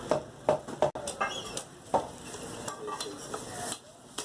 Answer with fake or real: real